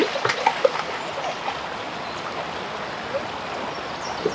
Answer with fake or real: real